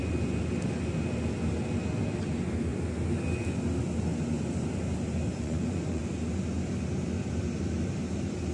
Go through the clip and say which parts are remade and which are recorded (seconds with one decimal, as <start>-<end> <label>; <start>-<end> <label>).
0.0-5.3 recorded; 5.3-6.0 remade; 6.0-8.5 recorded